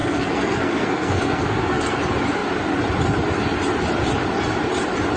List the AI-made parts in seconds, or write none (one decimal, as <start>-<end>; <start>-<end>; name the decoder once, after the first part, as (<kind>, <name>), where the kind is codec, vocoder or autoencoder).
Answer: 0.0-2.0 (codec, SNAC)